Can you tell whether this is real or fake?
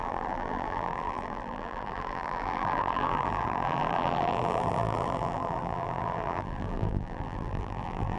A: fake